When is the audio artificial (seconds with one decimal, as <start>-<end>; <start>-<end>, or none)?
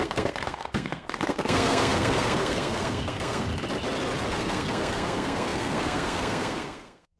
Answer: 0.0-3.5; 4.3-7.2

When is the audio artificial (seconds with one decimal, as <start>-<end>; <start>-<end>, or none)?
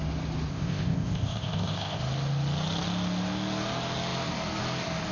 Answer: 0.5-2.0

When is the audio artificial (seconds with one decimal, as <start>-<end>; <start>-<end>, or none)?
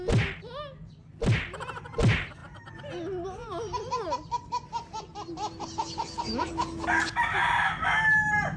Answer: none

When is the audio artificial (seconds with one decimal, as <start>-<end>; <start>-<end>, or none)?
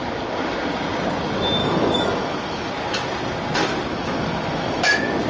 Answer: 1.6-2.7; 3.9-4.8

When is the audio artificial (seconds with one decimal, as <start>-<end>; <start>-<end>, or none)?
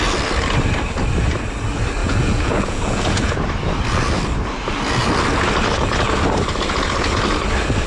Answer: 2.0-3.4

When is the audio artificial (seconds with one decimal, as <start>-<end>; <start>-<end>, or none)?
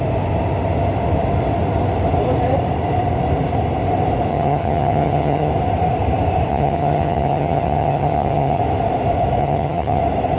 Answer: 4.3-5.5; 6.5-8.6; 9.4-10.0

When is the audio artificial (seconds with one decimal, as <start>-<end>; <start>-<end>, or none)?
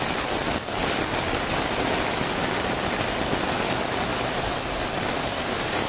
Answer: none